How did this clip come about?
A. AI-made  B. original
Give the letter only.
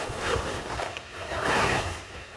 A